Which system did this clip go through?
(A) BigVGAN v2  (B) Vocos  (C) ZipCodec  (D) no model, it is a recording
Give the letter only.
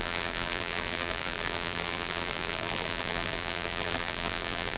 A